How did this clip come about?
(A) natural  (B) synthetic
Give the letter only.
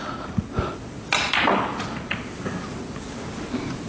A